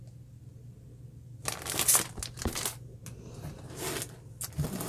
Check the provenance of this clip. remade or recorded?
recorded